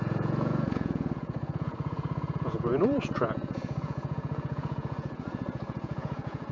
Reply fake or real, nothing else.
fake